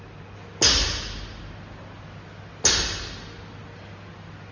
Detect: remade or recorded recorded